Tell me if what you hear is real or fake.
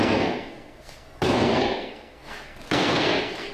fake